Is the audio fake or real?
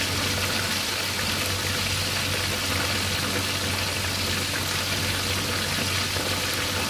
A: real